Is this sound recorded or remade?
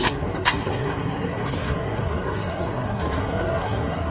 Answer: remade